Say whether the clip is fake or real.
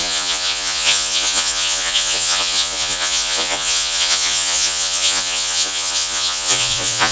fake